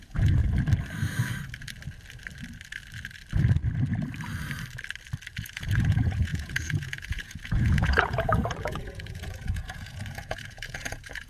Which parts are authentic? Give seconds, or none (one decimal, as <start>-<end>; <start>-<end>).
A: 0.4-5.4